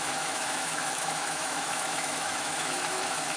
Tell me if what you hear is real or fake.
fake